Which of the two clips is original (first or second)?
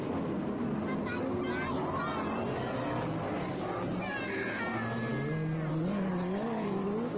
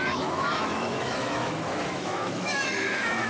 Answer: first